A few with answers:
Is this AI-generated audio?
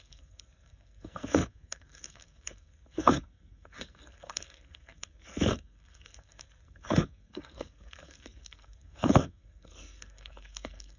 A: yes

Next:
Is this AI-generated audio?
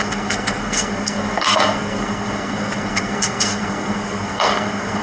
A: yes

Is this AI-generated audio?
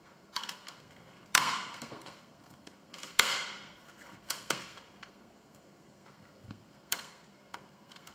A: yes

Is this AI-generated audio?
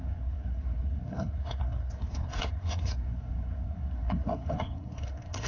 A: yes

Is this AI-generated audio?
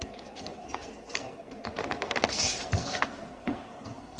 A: yes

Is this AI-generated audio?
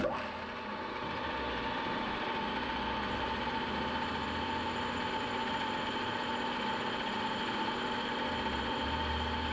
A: no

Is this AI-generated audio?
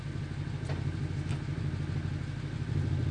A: no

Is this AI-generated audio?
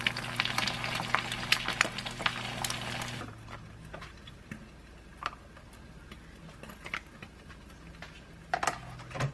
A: no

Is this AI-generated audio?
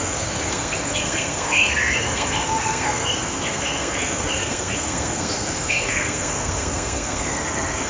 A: yes